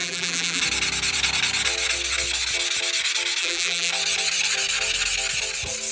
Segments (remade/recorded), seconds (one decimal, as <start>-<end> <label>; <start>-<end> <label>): 0.0-0.6 remade; 0.6-3.4 recorded; 3.4-3.9 remade; 3.9-5.9 recorded